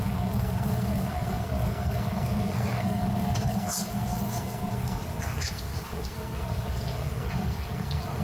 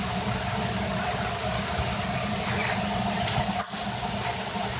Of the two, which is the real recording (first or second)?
second